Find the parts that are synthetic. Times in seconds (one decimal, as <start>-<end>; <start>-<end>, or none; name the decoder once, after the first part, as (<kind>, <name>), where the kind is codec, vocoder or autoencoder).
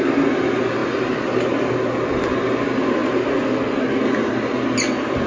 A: none